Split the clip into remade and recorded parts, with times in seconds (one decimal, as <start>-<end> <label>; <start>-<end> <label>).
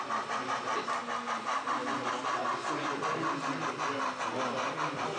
0.0-5.2 recorded